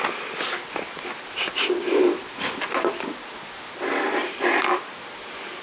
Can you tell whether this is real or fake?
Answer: real